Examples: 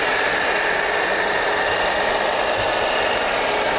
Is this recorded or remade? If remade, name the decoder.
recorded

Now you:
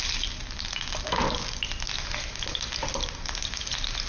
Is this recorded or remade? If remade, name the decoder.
recorded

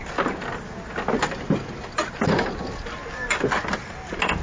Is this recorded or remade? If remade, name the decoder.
recorded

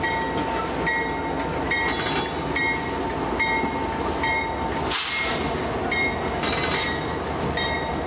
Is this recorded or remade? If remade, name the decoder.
recorded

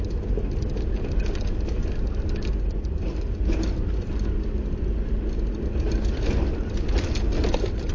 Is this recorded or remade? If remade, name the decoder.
recorded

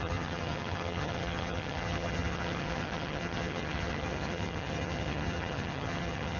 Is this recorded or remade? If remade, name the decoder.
remade, vocoder, HiFi-GAN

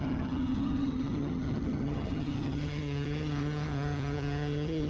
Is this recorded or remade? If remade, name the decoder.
remade, vocoder, HiFi-GAN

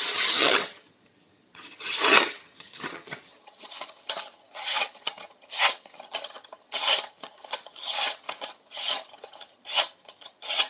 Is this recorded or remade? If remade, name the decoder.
remade, vocoder, HiFi-GAN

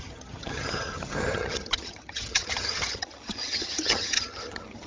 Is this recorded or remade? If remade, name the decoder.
remade, vocoder, HiFi-GAN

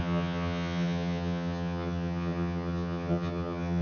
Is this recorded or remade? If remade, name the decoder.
remade, vocoder, HiFi-GAN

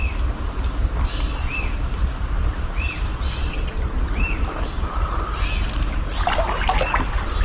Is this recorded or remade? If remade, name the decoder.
recorded